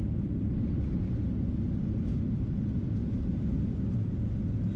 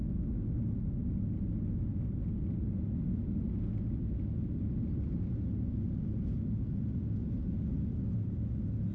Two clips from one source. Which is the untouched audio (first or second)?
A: second